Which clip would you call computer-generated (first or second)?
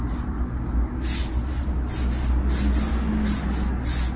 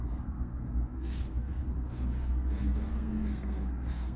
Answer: second